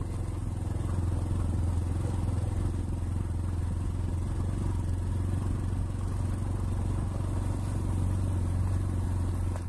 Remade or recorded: recorded